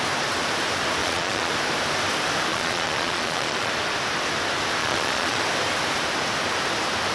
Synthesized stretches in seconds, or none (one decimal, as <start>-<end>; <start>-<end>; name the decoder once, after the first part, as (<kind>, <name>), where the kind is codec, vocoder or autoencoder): 1.0-1.5 (vocoder, Vocos); 2.5-3.7; 4.8-5.4